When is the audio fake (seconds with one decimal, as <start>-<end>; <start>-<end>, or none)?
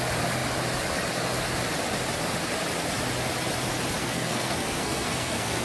4.0-5.6